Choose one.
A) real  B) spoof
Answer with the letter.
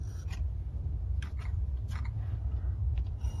A